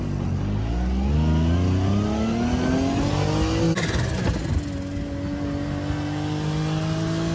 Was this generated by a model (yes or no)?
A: no